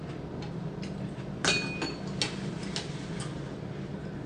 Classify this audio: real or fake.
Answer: real